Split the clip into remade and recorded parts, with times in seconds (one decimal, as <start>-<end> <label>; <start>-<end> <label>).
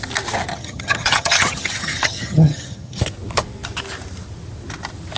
0.0-0.5 recorded; 0.5-3.0 remade; 3.0-5.2 recorded